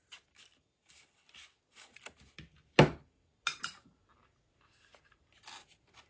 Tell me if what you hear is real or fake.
real